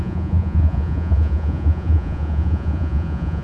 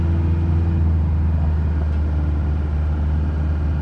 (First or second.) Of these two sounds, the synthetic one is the first